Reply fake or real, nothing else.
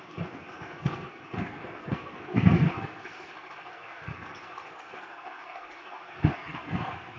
fake